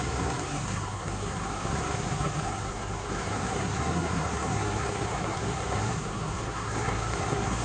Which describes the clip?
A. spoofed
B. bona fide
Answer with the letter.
A